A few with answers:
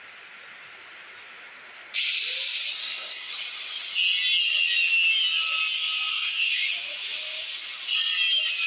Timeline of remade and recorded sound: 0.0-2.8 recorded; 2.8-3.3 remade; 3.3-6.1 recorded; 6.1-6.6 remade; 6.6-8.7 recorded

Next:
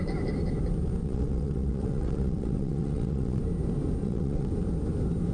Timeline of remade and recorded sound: 0.0-1.0 recorded; 1.0-3.4 remade; 3.4-4.0 recorded; 4.0-4.5 remade; 4.5-5.3 recorded

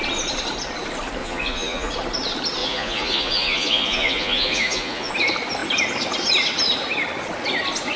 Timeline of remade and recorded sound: 0.0-1.2 recorded; 1.2-1.9 remade; 1.9-2.6 recorded; 2.6-5.1 remade; 5.1-8.0 recorded

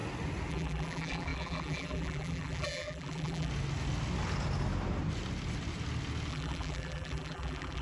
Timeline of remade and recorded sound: 0.0-0.5 recorded; 0.5-3.5 remade; 3.5-6.3 recorded; 6.3-7.8 remade

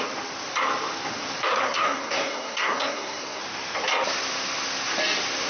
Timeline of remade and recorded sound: 0.0-1.5 recorded; 1.5-3.4 remade; 3.4-5.5 recorded

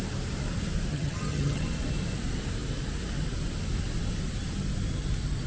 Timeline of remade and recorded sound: 0.0-0.9 recorded; 0.9-1.6 remade; 1.6-5.5 recorded

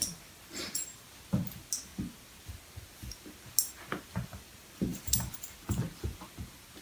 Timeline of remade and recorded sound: 0.0-6.8 recorded

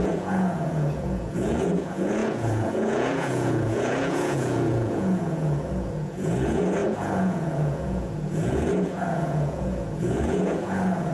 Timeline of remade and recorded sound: 0.0-11.1 remade